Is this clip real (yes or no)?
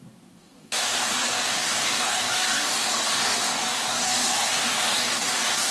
no